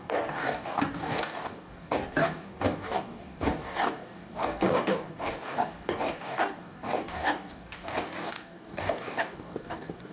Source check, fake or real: fake